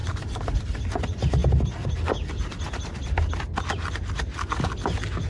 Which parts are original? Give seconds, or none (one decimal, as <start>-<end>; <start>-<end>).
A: 0.0-5.3